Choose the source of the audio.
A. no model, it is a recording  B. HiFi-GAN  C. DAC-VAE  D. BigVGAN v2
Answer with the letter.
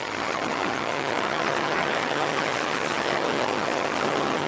B